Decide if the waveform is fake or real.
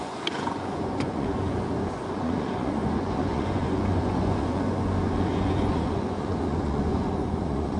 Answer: fake